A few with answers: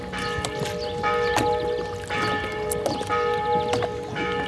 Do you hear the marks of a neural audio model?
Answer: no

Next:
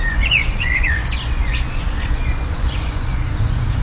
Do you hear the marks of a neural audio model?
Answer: yes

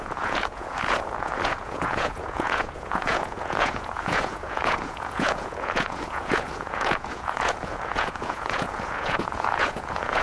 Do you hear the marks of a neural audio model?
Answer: yes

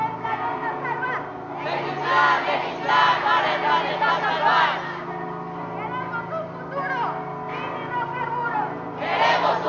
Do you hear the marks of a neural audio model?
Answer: no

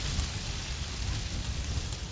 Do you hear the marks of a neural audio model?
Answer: no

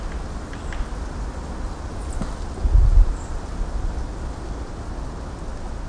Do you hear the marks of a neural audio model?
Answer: no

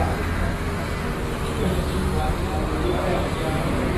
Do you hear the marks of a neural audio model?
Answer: no